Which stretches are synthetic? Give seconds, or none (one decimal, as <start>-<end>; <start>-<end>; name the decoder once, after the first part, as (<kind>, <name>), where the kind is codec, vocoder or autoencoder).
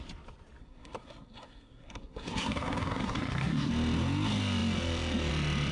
0.6-3.7 (codec, SNAC)